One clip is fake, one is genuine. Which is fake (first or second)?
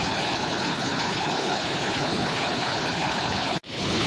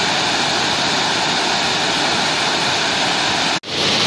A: first